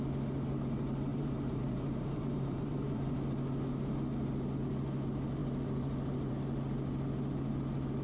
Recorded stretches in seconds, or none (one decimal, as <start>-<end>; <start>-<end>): 0.0-1.1; 3.1-8.0